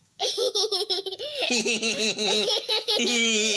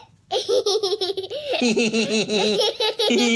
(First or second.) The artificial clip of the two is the first